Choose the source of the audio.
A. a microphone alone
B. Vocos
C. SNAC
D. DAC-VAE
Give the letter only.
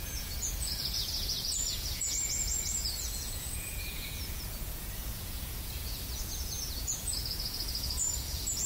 B